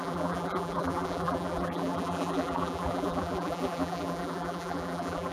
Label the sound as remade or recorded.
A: remade